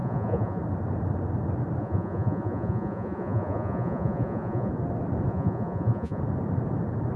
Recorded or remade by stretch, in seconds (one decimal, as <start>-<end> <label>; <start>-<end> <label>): 0.0-0.6 remade; 0.6-1.8 recorded; 1.8-4.7 remade; 4.7-5.3 recorded; 5.3-6.2 remade; 6.2-7.2 recorded